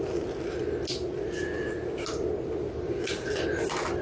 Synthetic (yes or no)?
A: no